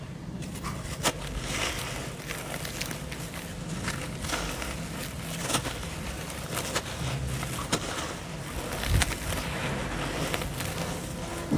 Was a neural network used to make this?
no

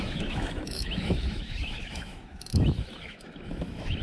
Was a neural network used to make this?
yes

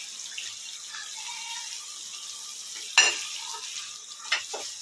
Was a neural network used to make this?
no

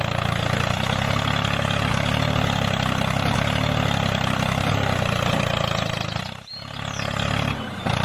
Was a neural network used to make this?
no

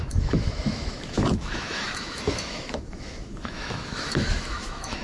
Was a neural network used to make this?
yes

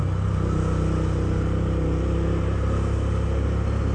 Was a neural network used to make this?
no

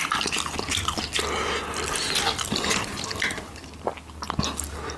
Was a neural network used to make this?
no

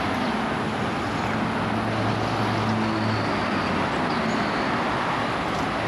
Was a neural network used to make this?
no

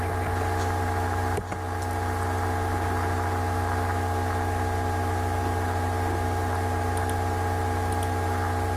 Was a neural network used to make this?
no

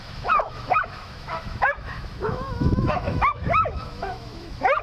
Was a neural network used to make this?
yes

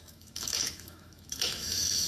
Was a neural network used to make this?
yes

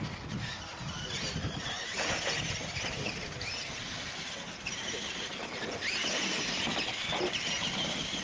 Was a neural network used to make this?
no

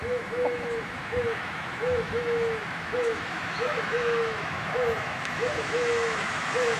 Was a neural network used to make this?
yes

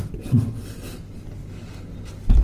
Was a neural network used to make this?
no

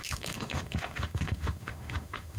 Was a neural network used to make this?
yes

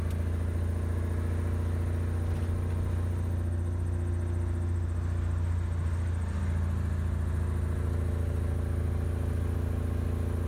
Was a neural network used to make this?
no